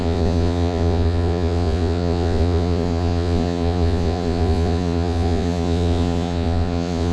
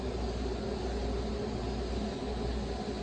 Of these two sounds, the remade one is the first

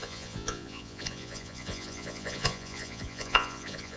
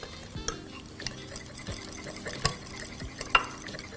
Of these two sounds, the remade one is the first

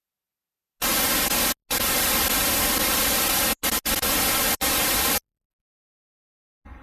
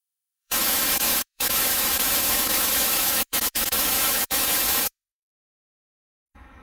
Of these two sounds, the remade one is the second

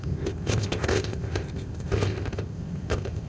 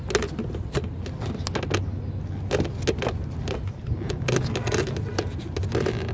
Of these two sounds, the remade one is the first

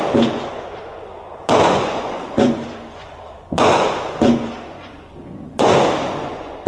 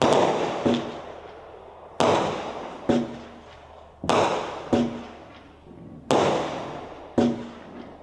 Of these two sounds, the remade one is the first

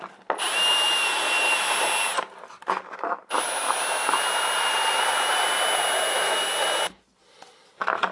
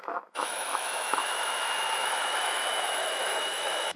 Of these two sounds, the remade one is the second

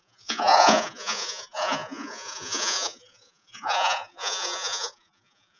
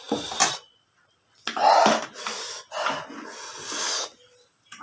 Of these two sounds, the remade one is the first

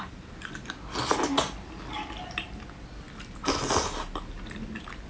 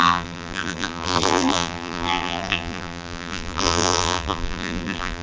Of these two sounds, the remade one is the second